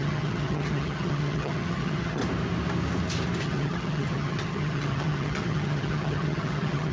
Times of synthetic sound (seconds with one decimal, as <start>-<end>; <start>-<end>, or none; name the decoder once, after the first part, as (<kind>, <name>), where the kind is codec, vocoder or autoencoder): 0.0-2.2 (vocoder, HiFi-GAN); 3.4-6.9